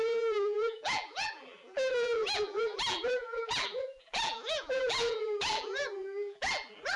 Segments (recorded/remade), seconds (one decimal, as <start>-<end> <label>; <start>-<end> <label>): 0.0-7.0 remade